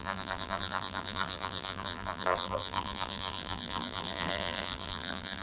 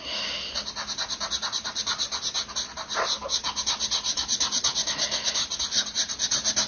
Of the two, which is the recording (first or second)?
second